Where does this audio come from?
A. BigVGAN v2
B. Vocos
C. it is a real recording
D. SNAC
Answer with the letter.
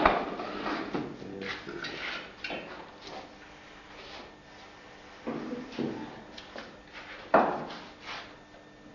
C